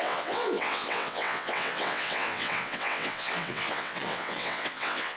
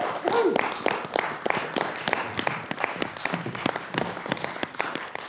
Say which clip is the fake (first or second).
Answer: first